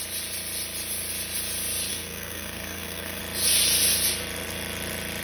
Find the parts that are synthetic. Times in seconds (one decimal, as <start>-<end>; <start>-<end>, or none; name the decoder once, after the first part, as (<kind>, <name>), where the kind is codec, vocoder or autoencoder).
1.9-3.2 (codec, SNAC)